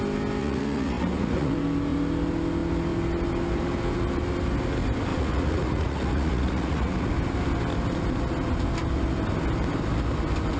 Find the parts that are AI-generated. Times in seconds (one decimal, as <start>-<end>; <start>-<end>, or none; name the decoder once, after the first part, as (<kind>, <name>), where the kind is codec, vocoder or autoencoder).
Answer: 0.4-1.5 (vocoder, Vocos); 5.1-7.1